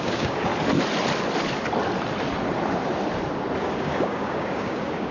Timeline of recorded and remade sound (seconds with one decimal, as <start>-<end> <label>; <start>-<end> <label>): 0.0-0.5 remade; 0.5-3.6 recorded; 3.6-5.1 remade